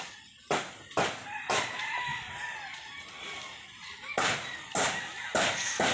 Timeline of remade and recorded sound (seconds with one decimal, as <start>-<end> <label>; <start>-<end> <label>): 0.0-5.9 recorded